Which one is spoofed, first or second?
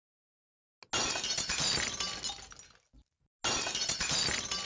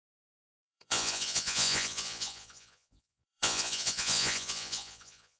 second